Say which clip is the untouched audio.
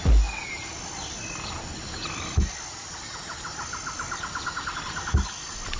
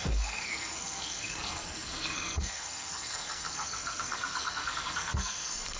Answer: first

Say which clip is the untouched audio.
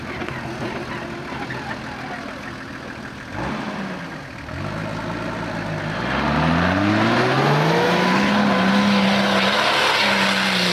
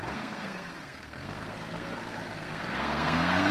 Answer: first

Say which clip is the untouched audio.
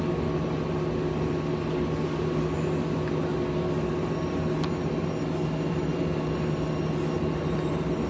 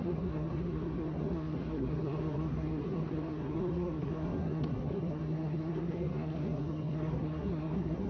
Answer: first